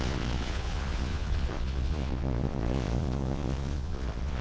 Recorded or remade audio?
remade